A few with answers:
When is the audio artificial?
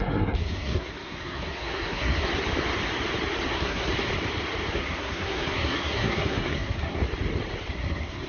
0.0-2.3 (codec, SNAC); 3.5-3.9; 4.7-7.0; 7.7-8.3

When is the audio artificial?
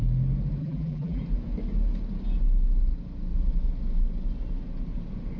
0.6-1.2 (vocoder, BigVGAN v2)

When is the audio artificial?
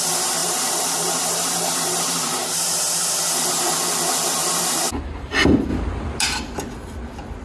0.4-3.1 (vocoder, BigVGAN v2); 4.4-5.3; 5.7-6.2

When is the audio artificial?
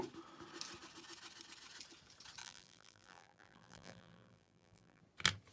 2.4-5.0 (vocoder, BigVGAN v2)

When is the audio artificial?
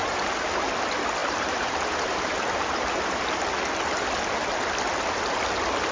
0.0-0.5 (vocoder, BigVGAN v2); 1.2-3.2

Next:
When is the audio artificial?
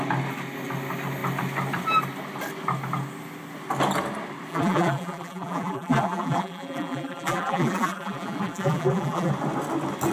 4.5-9.3 (vocoder, BigVGAN v2)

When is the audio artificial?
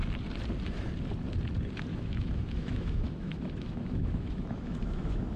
1.9-5.4 (autoencoder, DAC-VAE)